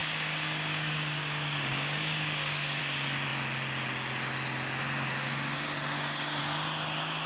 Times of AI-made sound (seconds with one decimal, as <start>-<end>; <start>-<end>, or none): 0.0-2.8; 5.2-6.4